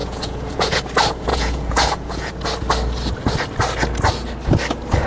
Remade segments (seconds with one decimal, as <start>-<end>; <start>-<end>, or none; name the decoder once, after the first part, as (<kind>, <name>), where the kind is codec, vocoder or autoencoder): 0.0-0.8 (vocoder, Vocos); 1.3-2.3